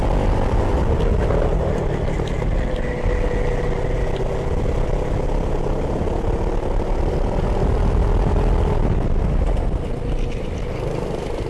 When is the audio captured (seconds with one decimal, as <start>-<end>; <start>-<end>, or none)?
0.0-11.5